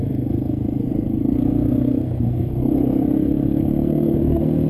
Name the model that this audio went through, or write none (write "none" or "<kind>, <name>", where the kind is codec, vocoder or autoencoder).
codec, SNAC